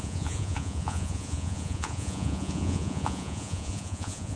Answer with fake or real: fake